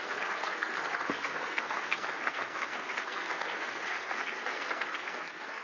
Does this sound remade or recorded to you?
remade